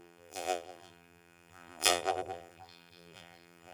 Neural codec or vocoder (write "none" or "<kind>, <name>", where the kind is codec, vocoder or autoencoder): vocoder, BigVGAN v2